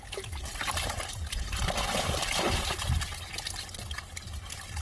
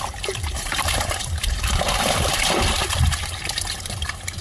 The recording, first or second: first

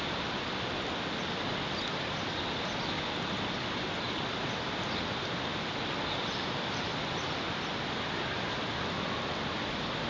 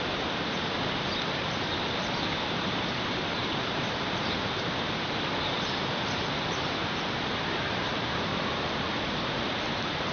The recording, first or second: first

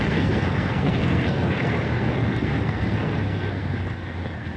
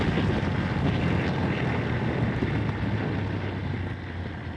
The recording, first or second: second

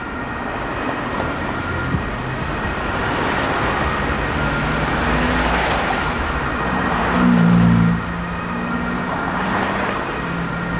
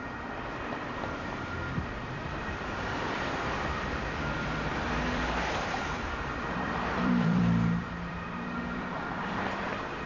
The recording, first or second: first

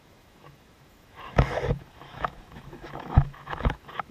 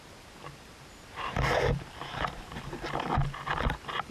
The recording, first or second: second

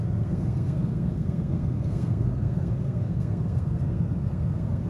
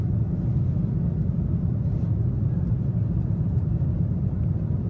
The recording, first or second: second